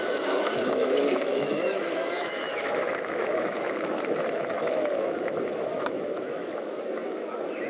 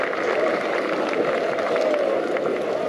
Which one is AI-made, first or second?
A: first